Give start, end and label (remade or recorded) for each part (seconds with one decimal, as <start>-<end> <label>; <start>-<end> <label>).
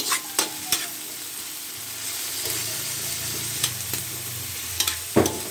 0.0-2.6 recorded; 2.6-5.5 remade